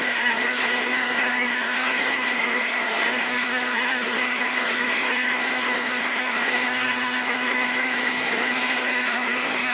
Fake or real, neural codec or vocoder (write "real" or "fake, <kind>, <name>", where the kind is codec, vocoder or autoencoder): fake, codec, SNAC